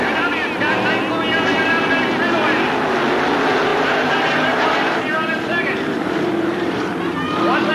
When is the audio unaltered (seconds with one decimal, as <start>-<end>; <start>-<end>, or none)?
0.0-3.7